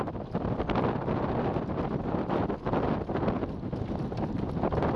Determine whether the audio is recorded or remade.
recorded